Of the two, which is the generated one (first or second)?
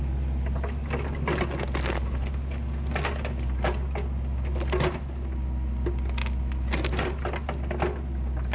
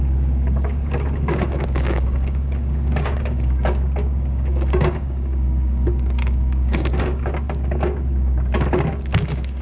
second